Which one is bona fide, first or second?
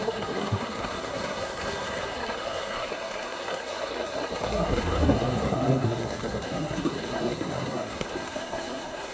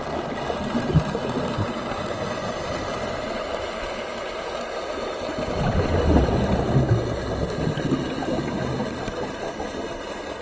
second